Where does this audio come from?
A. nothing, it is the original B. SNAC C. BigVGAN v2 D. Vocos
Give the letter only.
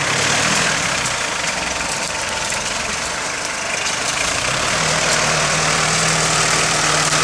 C